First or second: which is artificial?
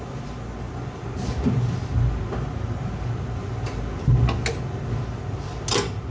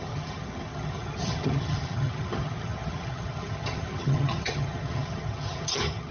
second